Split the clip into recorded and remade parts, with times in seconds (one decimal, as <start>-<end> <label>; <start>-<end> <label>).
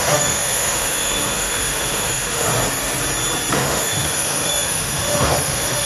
0.0-2.5 remade; 2.5-3.5 recorded; 3.5-5.9 remade